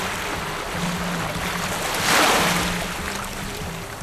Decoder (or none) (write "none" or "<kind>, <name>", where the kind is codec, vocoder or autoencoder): none